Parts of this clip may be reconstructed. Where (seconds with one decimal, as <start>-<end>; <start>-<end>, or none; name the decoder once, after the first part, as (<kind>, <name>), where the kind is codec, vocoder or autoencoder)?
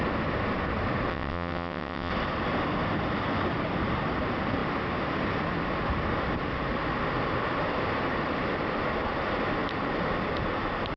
1.1-2.1 (vocoder, WaveNeXt)